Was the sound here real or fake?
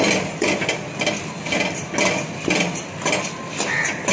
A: real